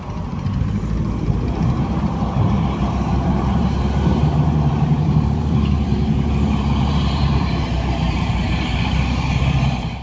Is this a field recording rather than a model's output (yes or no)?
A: no